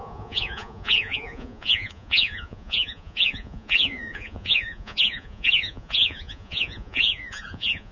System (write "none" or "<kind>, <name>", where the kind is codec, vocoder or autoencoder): vocoder, Vocos